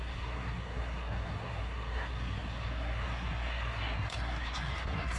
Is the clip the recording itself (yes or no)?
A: no